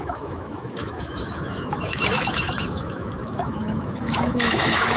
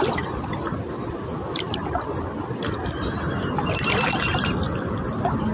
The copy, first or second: first